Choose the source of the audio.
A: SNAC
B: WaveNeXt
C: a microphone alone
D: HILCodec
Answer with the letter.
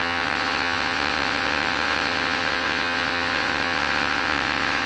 B